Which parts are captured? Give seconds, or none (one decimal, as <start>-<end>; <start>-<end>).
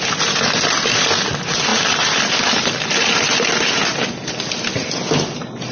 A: 0.0-5.7